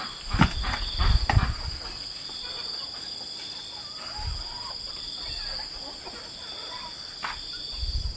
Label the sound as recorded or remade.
recorded